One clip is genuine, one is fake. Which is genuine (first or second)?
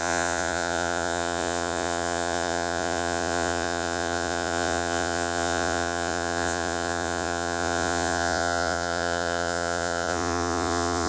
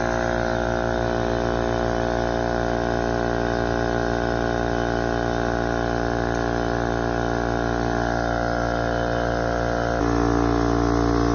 second